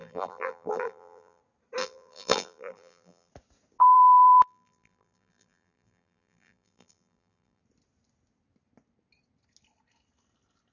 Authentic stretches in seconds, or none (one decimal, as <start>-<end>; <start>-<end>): 1.4-1.8; 3.3-3.8; 7.6-10.7